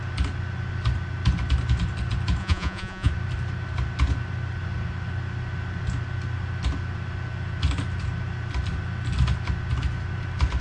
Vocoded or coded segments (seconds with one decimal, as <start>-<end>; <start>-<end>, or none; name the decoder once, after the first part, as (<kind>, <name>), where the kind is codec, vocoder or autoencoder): 2.4-3.1 (vocoder, Vocos)

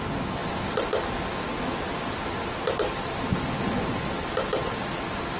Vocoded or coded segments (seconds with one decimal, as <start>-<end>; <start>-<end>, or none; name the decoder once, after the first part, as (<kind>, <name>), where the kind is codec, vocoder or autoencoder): none